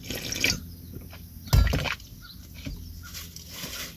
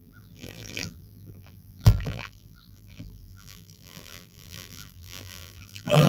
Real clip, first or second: first